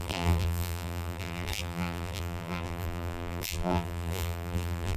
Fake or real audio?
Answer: fake